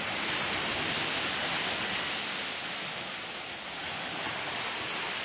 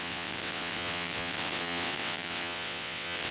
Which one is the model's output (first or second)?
second